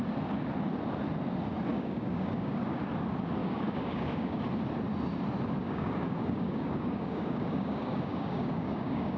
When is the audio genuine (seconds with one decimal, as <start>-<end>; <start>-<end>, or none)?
0.0-1.7; 2.8-3.4; 4.4-5.6